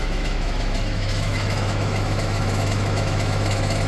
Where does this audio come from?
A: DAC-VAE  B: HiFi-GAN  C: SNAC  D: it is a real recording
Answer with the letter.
A